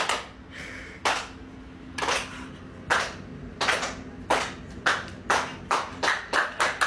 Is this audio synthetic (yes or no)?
no